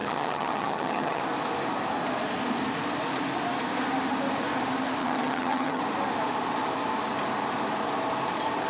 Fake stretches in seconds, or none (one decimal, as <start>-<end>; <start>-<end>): 0.0-1.2; 5.0-5.8